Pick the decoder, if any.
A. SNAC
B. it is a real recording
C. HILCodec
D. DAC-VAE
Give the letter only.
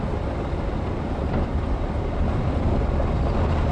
B